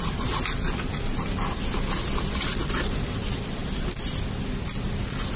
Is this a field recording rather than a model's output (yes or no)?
yes